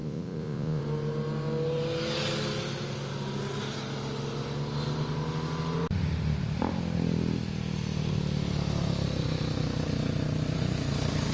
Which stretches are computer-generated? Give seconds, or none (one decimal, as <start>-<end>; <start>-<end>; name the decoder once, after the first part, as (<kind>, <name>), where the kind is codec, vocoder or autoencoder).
0.0-0.8 (vocoder, Vocos)